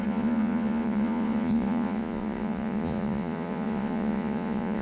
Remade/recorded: remade